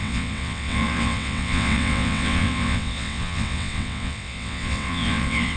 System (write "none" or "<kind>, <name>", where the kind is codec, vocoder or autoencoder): vocoder, WaveNeXt